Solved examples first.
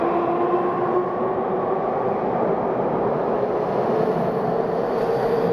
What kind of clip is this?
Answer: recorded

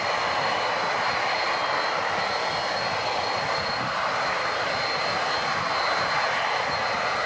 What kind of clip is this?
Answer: recorded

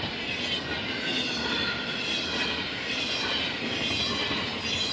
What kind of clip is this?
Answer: recorded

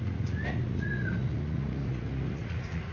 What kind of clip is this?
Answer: remade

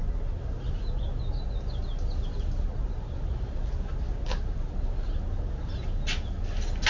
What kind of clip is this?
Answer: recorded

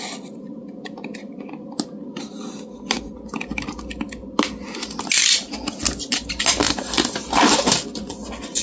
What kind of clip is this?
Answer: recorded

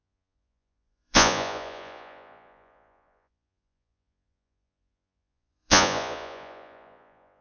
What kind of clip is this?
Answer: remade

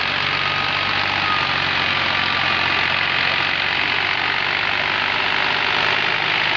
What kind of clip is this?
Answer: recorded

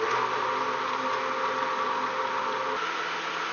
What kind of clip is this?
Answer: recorded